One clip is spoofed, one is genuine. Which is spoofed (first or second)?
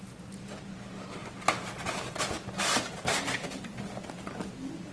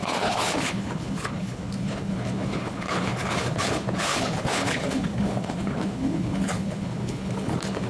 second